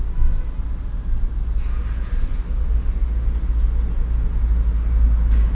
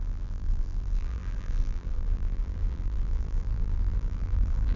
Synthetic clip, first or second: second